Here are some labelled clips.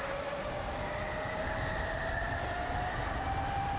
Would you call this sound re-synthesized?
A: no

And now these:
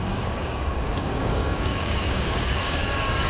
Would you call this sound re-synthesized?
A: yes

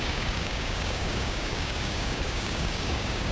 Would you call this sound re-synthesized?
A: yes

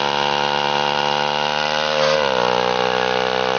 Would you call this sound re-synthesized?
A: no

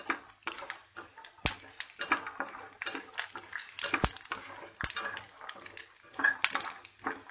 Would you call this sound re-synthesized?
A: no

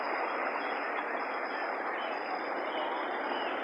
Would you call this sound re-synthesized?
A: no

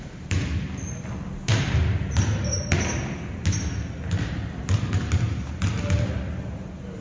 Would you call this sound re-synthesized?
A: no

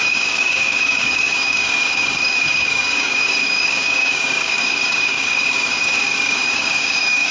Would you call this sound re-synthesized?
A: yes